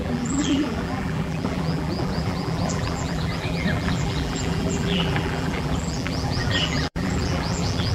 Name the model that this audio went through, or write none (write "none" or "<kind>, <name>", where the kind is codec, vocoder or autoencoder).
vocoder, BigVGAN v2